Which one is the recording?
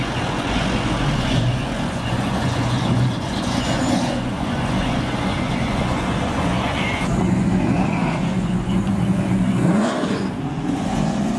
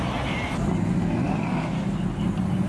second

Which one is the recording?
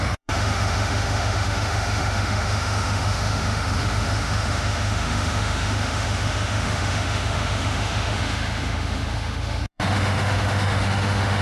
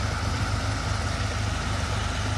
second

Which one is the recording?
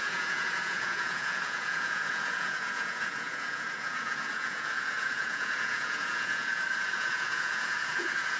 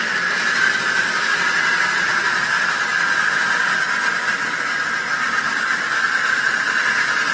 second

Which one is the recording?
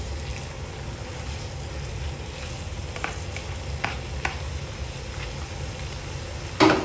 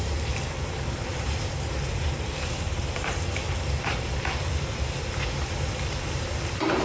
first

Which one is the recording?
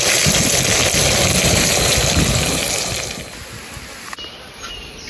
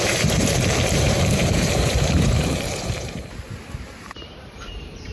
first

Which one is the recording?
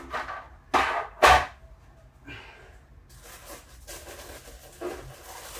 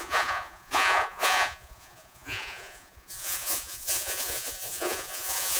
first